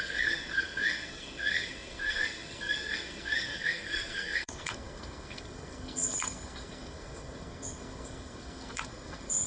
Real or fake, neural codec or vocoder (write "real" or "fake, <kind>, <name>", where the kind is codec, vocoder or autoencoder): fake, codec, SNAC